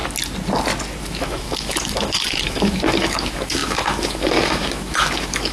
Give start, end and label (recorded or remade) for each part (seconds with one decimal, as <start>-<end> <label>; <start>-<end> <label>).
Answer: 0.0-1.0 recorded; 1.0-5.5 remade